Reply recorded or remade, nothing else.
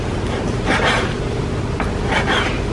recorded